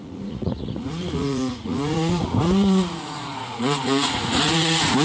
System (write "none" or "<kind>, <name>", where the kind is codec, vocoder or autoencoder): vocoder, Vocos